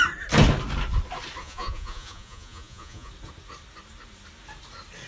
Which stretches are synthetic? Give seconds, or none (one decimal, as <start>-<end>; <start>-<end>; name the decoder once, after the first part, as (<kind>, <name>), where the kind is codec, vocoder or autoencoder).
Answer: 1.4-3.1 (vocoder, Vocos)